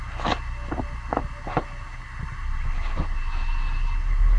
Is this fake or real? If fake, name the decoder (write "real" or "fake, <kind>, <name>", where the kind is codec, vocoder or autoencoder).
real